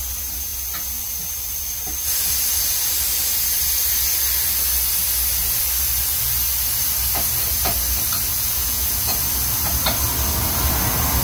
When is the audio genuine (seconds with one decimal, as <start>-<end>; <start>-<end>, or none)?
0.0-8.3; 9.2-11.2